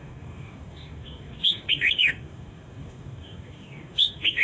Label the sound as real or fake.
fake